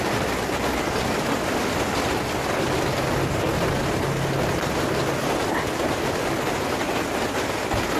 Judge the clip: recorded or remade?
recorded